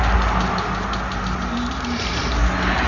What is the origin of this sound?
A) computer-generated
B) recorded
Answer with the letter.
B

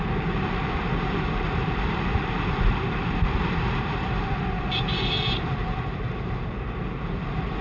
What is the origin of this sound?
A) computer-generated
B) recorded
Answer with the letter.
A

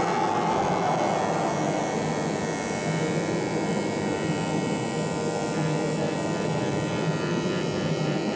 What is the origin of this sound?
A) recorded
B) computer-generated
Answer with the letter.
B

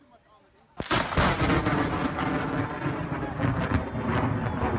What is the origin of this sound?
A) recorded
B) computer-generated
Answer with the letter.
A